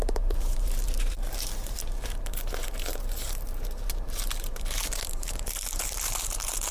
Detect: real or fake fake